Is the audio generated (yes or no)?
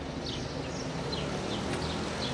no